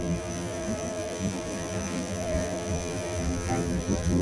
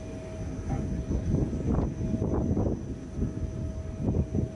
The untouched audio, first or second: second